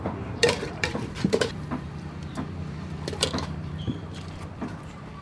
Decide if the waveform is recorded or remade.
remade